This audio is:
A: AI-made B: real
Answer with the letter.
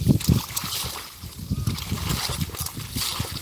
B